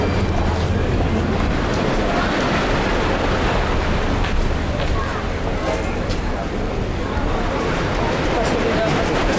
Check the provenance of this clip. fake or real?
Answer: real